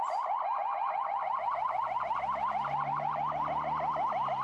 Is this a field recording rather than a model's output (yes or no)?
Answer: yes